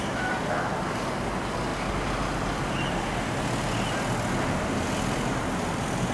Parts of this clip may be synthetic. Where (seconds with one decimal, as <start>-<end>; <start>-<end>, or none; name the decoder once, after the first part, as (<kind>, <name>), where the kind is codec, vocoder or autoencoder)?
none